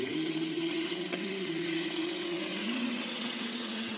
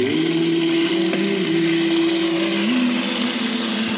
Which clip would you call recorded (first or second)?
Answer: second